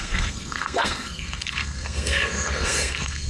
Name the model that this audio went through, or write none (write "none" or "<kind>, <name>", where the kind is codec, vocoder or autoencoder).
codec, SNAC